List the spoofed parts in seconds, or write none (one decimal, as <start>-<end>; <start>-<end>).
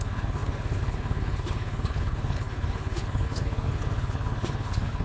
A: 0.0-5.0